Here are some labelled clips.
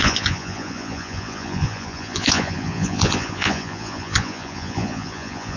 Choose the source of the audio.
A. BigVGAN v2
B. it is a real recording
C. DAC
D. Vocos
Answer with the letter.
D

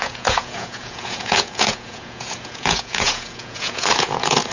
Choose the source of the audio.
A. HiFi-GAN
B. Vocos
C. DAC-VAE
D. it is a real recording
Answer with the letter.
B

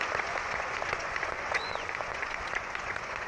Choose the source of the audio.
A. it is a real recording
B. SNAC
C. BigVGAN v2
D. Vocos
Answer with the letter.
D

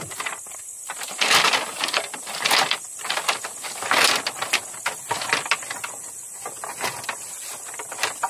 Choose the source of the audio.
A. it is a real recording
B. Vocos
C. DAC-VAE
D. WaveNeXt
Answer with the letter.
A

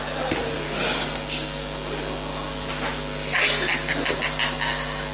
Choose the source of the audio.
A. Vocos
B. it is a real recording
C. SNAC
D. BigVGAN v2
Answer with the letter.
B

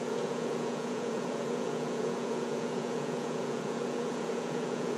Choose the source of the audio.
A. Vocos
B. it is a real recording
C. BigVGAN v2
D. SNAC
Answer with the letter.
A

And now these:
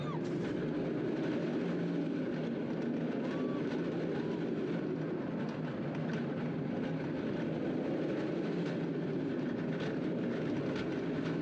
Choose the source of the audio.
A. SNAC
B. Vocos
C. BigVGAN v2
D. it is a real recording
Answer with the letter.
D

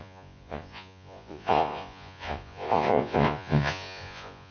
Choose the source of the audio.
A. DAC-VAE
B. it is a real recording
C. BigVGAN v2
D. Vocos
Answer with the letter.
D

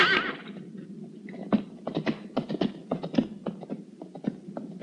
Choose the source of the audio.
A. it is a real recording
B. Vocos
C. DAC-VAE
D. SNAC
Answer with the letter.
A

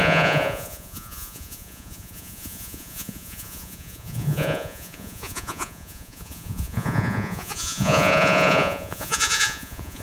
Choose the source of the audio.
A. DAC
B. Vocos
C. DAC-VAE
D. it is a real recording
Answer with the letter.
B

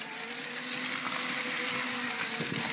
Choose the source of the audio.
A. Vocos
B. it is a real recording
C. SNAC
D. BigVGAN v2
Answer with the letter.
B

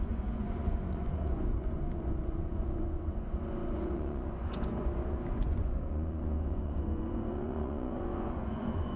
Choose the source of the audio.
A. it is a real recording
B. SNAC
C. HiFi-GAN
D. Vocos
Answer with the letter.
D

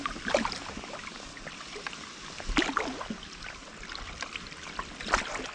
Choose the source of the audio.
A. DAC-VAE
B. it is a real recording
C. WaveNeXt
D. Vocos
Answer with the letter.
B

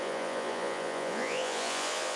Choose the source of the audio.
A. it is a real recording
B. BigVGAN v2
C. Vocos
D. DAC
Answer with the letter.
C